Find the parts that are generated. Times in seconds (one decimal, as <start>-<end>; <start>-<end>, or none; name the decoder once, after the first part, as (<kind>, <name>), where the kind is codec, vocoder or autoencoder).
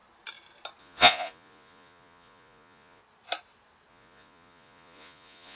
0.8-3.0 (vocoder, Vocos); 3.9-5.5